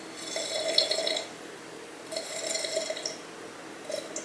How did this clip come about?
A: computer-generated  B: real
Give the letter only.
B